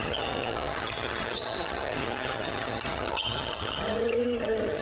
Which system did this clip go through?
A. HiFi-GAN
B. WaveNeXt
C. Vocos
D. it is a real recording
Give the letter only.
A